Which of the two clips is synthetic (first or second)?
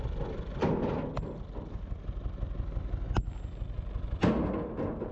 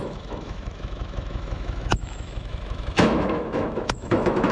second